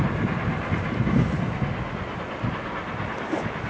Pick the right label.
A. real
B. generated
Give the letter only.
A